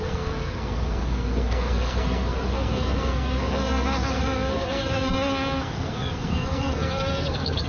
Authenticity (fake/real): fake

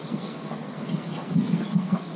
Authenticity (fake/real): fake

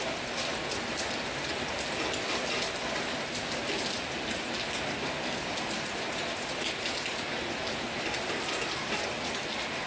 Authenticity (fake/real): real